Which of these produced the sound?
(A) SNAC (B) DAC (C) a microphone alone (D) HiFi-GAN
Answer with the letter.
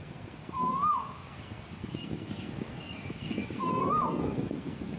A